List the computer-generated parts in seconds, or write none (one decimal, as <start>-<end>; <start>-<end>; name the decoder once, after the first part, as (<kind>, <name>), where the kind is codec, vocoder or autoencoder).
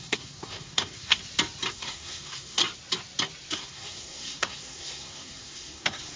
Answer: 0.0-1.2 (codec, SNAC); 1.7-2.6; 3.5-6.2